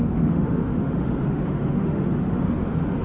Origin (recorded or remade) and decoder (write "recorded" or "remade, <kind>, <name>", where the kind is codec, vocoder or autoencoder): remade, autoencoder, DAC-VAE